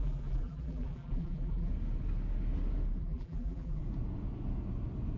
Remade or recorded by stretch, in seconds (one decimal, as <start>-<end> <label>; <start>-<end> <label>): 0.0-1.7 remade; 1.7-3.0 recorded; 3.0-3.8 remade; 3.8-5.2 recorded